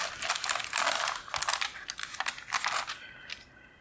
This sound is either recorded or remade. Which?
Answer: recorded